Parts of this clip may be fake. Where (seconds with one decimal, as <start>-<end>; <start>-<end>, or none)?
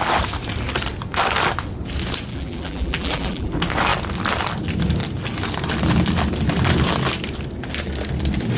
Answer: 2.3-3.5